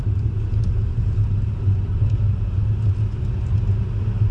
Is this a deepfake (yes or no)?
no